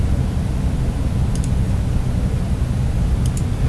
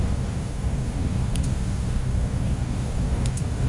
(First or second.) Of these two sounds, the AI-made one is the second